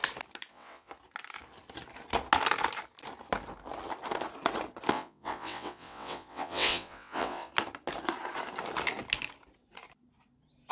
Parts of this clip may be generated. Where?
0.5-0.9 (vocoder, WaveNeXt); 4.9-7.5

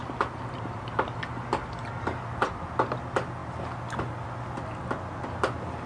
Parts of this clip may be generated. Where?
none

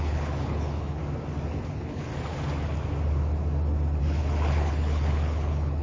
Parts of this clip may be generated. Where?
0.0-1.0 (codec, HILCodec); 1.6-2.1; 4.0-5.8